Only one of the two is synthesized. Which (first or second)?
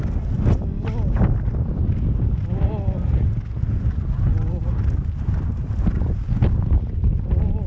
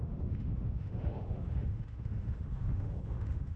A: second